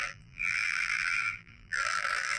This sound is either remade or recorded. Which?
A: remade